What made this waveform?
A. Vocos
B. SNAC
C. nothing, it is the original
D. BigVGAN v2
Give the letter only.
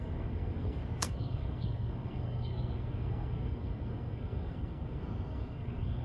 B